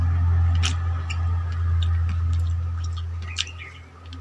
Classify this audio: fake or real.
real